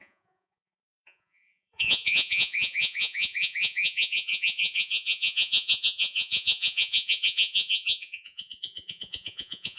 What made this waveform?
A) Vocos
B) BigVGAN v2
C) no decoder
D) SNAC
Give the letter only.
A